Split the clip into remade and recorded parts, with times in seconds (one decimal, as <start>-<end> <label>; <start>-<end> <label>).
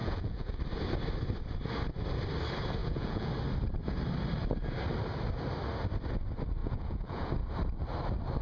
0.0-0.6 remade; 0.6-2.8 recorded; 2.8-3.3 remade; 3.3-6.6 recorded; 6.6-7.3 remade; 7.3-8.4 recorded